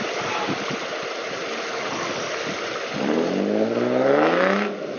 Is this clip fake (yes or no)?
no